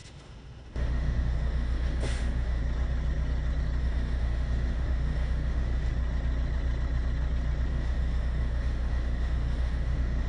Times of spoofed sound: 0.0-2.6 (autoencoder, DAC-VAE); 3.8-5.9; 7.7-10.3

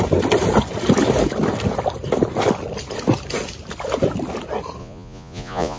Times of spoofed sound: 4.8-5.8 (vocoder, Vocos)

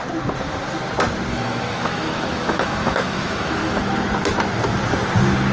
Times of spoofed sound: 1.3-3.8 (autoencoder, DAC-VAE)

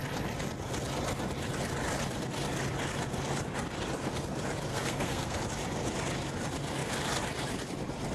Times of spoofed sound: 4.7-5.4 (codec, SNAC)

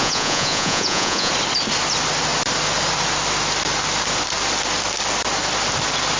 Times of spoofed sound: 0.0-1.3 (vocoder, Vocos)

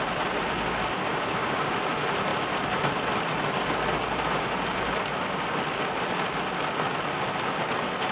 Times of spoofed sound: 1.1-1.7 (codec, DAC)

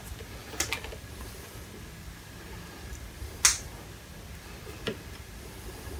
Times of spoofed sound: none